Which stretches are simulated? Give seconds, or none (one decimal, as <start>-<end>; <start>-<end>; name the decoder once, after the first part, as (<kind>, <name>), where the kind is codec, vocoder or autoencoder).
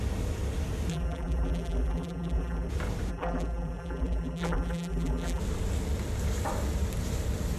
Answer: 0.9-2.7 (vocoder, BigVGAN v2); 3.1-5.4